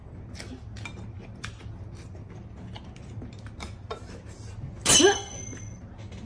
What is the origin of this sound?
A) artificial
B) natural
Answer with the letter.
B